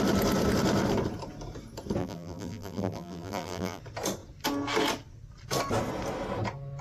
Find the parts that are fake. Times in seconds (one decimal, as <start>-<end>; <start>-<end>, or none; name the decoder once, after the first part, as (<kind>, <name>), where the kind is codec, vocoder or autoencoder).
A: 2.0-3.8 (vocoder, BigVGAN v2)